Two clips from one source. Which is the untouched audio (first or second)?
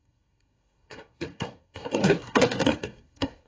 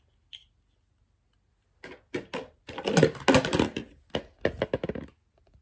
second